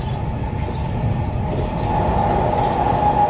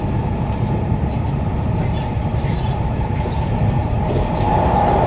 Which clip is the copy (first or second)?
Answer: second